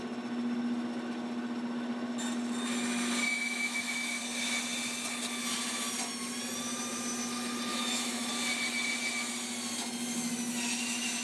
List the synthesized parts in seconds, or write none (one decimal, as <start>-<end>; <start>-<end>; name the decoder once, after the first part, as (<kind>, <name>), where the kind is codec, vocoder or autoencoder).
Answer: 3.3-4.2 (autoencoder, DAC-VAE); 7.7-8.3